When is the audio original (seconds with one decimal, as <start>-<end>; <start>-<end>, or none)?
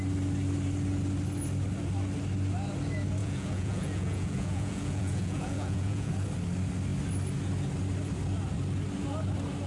0.0-3.2; 6.1-9.7